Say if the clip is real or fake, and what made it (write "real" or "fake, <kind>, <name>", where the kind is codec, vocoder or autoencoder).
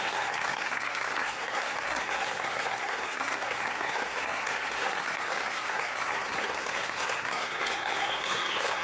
fake, codec, SNAC